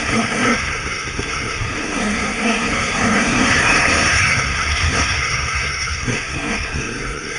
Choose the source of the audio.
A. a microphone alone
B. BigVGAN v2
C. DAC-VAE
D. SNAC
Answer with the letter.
D